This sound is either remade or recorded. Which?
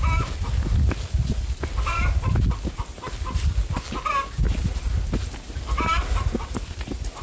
recorded